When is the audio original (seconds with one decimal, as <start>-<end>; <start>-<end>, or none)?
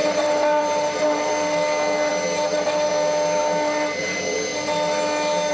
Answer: 1.3-5.5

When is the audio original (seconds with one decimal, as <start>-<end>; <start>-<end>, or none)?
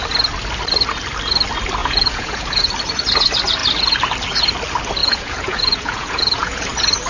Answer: 0.0-1.8; 2.6-5.0; 6.6-7.1